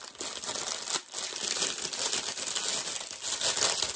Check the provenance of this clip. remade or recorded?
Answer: recorded